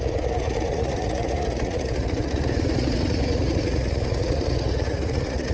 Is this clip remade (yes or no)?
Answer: yes